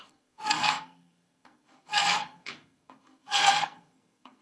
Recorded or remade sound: remade